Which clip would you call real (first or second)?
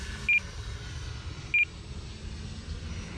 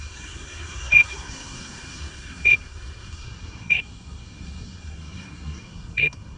first